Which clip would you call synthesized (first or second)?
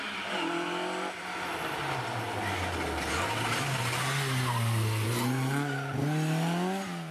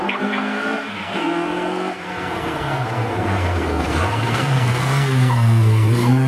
second